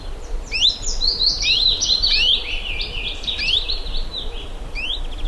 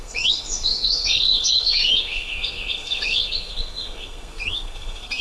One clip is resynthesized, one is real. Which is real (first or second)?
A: first